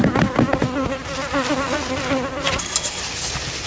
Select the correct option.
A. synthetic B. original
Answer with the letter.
B